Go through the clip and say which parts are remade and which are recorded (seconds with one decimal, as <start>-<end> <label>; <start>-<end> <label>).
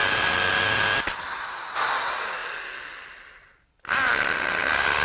0.0-5.0 recorded